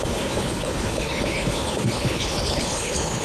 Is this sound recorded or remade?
remade